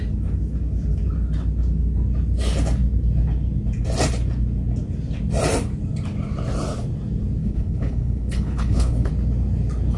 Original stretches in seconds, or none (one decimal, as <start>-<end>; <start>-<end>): 0.0-7.4; 9.1-10.0